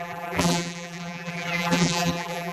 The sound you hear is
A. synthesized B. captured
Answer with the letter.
A